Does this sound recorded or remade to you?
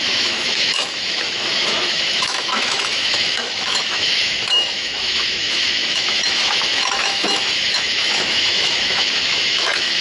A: remade